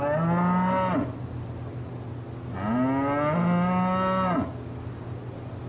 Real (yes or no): yes